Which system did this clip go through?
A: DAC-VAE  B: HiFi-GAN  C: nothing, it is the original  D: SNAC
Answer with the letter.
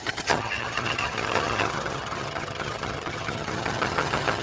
B